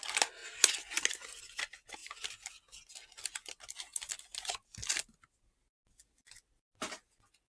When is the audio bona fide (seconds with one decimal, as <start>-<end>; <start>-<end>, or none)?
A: 0.0-7.5